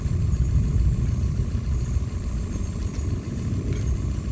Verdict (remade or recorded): recorded